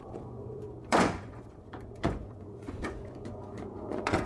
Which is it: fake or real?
fake